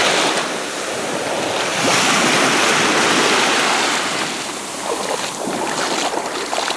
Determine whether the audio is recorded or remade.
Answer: recorded